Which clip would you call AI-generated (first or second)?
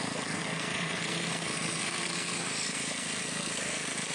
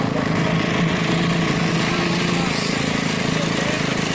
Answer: first